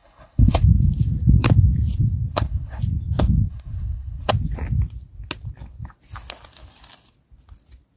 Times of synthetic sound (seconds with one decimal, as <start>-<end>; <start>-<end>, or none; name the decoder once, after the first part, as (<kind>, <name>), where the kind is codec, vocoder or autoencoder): 0.0-0.6 (codec, HILCodec); 2.3-2.8; 3.5-4.3